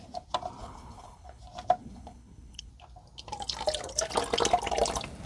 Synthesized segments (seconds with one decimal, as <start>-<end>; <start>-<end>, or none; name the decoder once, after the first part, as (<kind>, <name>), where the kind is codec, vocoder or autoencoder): 0.6-1.4 (codec, HILCodec); 1.8-2.7